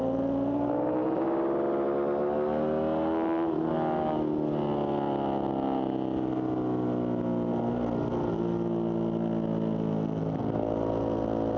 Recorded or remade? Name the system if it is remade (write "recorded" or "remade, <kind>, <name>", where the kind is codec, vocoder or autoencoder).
recorded